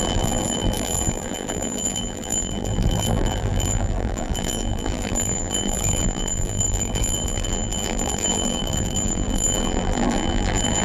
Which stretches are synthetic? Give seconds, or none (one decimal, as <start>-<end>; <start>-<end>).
0.0-10.8